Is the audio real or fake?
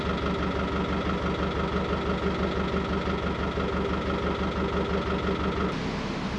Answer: real